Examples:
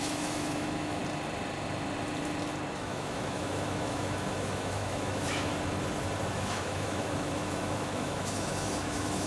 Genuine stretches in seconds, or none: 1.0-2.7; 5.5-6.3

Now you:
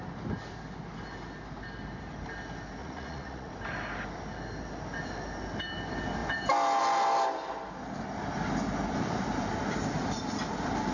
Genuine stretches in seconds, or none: 0.0-2.8; 3.5-10.9